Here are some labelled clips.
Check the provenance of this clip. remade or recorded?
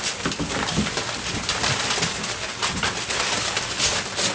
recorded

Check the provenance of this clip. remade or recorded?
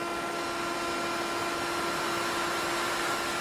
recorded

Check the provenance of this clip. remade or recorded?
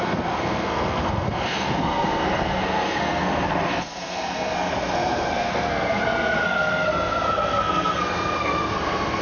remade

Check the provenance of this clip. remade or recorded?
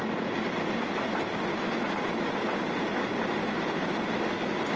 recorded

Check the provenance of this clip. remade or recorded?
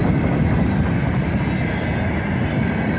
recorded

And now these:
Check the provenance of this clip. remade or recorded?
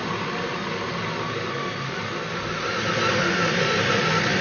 recorded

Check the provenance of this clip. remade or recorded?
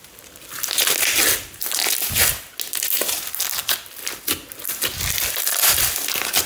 recorded